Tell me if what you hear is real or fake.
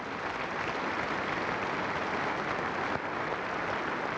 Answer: real